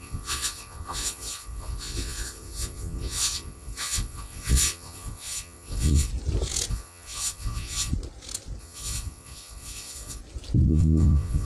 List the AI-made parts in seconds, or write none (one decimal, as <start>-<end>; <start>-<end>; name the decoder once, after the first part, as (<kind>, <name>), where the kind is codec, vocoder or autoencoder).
0.0-6.1 (vocoder, Vocos); 6.7-7.9; 8.6-10.2; 10.7-11.4